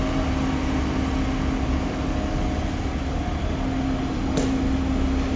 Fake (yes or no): no